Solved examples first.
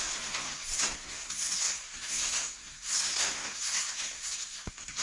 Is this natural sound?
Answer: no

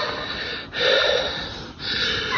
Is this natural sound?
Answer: yes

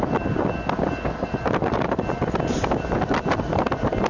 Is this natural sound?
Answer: yes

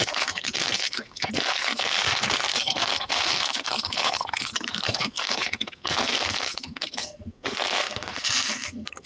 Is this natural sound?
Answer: no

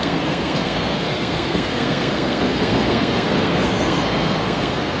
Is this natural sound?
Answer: no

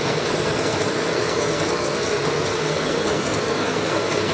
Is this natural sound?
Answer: no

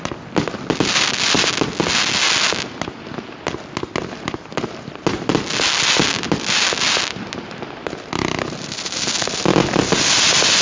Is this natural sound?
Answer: yes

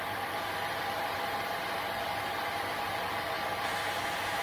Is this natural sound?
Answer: yes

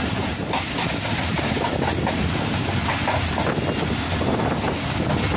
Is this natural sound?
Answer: yes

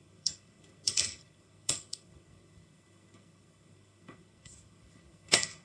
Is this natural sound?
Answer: no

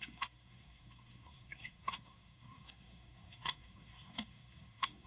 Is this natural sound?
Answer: no